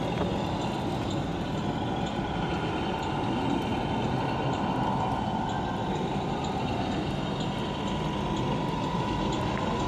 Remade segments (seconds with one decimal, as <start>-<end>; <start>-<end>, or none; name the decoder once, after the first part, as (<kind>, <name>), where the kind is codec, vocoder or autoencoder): none